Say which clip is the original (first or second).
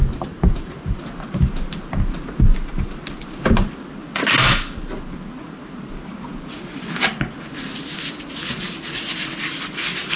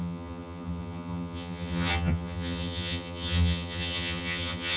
first